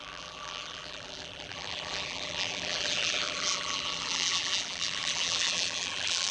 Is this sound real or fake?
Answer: fake